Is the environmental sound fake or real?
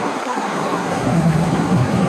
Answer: fake